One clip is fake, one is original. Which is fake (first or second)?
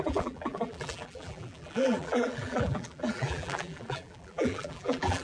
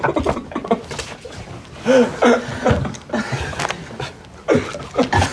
first